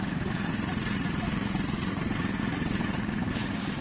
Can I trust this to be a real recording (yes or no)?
no